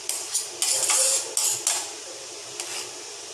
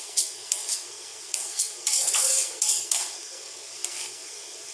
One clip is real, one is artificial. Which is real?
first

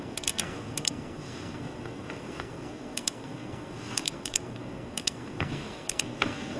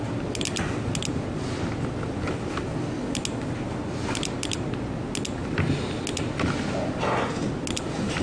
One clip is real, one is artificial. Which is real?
second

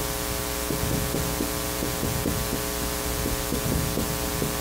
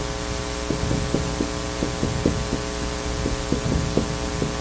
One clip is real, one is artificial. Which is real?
first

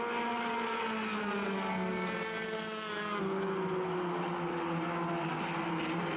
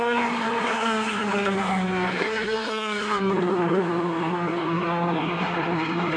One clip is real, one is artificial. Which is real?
first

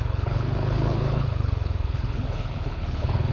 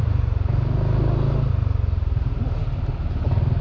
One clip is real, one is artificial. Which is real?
second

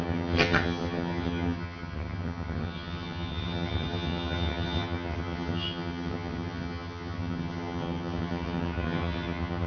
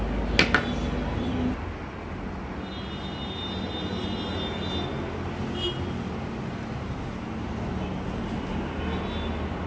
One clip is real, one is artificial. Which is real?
second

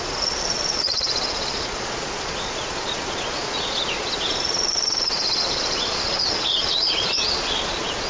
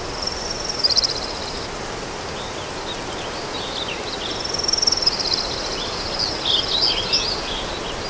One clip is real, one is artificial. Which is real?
second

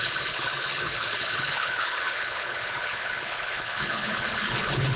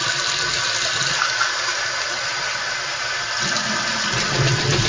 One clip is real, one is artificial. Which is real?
second